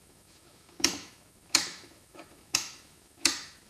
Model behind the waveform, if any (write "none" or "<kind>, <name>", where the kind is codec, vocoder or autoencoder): autoencoder, DAC-VAE